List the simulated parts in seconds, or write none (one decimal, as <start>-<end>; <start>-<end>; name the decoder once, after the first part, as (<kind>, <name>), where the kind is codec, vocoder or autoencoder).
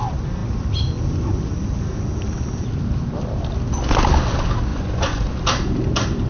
4.7-5.3 (vocoder, Vocos)